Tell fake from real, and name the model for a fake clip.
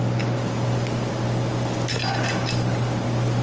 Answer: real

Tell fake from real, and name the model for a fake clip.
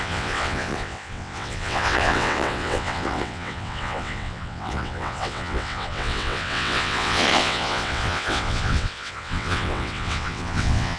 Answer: fake, vocoder, WaveNeXt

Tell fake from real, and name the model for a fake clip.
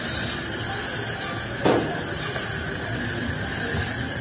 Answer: real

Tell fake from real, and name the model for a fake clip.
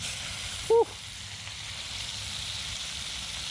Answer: real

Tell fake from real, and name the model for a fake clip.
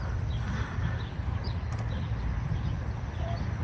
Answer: real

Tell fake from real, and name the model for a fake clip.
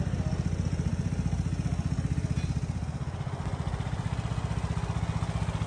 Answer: real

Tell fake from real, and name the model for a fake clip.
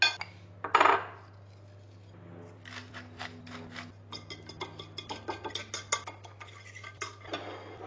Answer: real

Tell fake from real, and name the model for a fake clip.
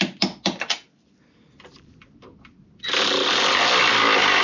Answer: real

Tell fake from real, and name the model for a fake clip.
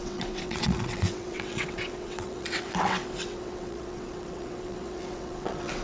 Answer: fake, vocoder, WaveNeXt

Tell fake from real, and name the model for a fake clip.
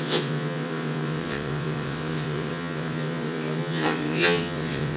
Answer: fake, vocoder, WaveNeXt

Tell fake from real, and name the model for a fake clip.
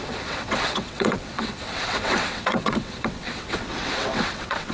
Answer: fake, vocoder, WaveNeXt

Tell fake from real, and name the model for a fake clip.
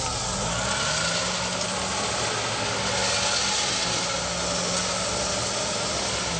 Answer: real